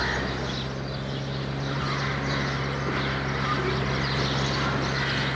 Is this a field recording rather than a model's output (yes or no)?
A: yes